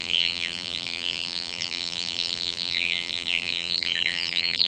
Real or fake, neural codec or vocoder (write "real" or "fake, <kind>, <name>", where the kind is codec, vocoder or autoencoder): fake, vocoder, BigVGAN v2